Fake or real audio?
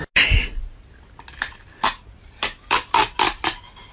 real